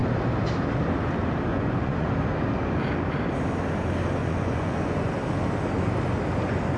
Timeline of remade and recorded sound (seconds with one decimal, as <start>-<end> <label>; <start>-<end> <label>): 0.0-1.5 recorded; 1.5-2.1 remade; 2.1-4.2 recorded; 4.2-5.1 remade; 5.1-6.8 recorded